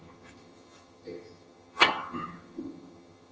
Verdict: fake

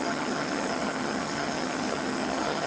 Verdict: fake